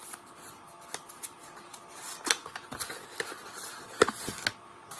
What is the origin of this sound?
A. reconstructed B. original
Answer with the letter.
B